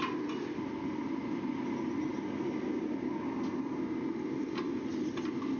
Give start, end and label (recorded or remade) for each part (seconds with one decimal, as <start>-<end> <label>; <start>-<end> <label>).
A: 0.0-5.6 recorded